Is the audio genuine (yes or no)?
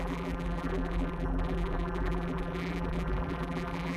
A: no